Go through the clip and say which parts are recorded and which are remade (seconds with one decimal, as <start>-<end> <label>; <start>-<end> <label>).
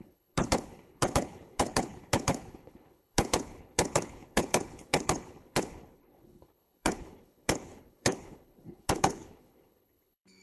0.0-10.4 remade